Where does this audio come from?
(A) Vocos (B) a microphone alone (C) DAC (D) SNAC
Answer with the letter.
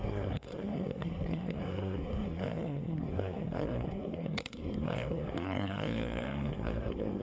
D